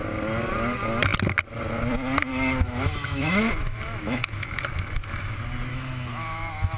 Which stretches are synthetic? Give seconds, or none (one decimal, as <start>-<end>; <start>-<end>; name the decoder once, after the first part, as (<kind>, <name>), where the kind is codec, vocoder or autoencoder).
2.3-5.3 (autoencoder, DAC-VAE); 5.7-6.8